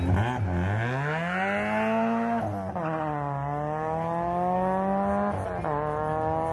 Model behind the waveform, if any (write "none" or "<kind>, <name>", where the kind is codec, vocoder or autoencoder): none